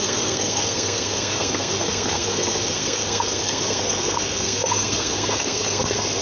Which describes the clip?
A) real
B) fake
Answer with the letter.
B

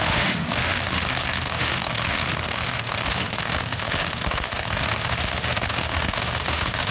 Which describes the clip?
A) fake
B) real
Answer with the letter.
A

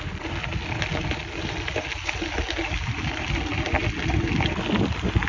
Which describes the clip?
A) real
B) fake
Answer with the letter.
A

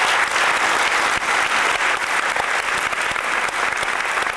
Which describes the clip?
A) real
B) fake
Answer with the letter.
A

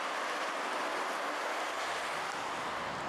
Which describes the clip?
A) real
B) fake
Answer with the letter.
A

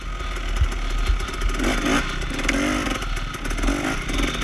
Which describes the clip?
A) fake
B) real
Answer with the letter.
B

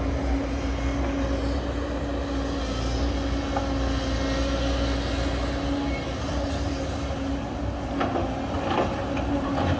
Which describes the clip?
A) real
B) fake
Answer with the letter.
A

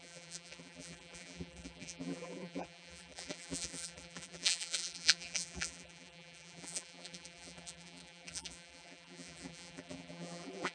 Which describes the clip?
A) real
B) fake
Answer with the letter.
B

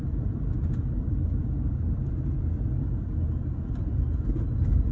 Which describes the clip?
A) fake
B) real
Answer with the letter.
B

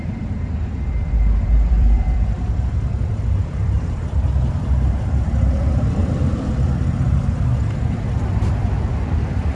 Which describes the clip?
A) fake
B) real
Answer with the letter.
A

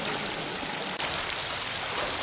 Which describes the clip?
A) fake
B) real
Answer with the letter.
B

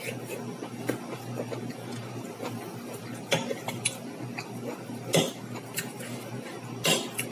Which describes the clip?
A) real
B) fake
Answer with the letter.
A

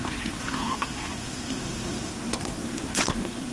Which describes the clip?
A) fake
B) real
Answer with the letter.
A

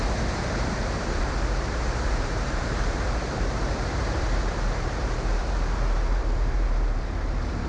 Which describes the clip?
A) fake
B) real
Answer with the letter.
A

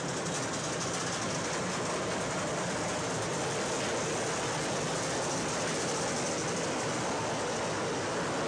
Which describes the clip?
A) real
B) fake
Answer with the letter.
A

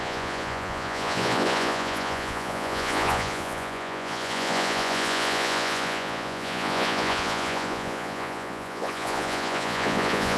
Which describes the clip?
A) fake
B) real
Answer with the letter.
A